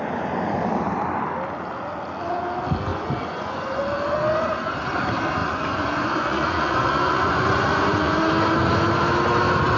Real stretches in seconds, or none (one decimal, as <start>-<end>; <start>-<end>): 0.0-2.9; 3.8-5.4; 8.2-9.8